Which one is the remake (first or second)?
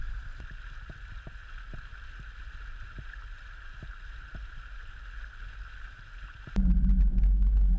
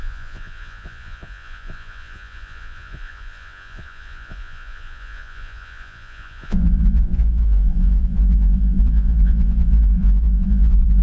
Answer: second